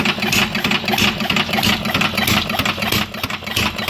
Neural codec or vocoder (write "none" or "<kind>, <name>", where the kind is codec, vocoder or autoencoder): none